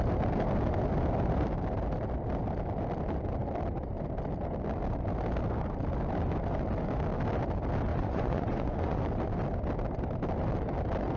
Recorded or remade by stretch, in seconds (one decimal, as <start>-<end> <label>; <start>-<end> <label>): 0.0-7.9 recorded; 7.9-9.0 remade; 9.0-11.2 recorded